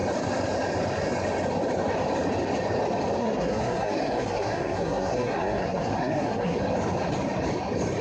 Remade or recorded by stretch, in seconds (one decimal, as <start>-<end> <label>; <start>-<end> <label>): 0.0-3.2 recorded; 3.2-6.6 remade; 6.6-8.0 recorded